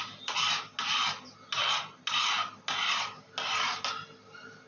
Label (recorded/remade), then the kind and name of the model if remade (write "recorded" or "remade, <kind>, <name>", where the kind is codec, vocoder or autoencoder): recorded